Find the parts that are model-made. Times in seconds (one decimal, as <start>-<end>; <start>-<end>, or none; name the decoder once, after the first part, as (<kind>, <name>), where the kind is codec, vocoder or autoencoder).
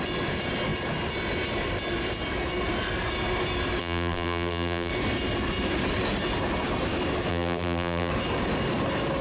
3.8-4.9 (vocoder, BigVGAN v2); 7.3-8.1